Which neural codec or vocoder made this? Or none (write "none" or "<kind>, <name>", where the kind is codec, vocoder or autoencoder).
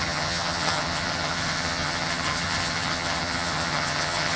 vocoder, HiFi-GAN